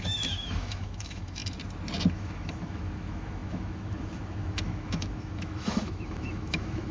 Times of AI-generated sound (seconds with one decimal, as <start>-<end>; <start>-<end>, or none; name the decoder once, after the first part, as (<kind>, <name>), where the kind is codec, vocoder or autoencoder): 0.0-1.4 (autoencoder, DAC-VAE); 2.1-6.9